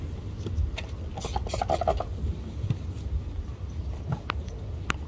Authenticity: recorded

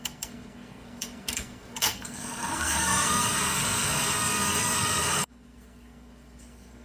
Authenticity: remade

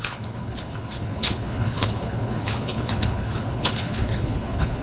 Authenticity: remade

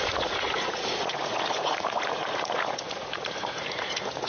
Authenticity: remade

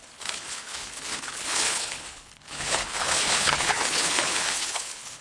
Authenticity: remade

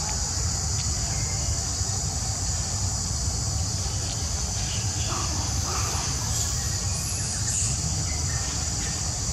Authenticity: recorded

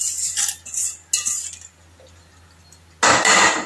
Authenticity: recorded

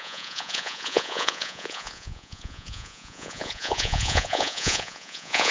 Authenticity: remade